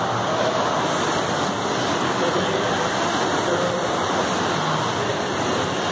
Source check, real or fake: real